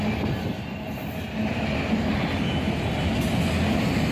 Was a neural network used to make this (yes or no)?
no